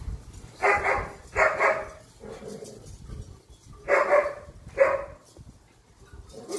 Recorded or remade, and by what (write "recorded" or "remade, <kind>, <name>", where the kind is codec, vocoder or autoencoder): recorded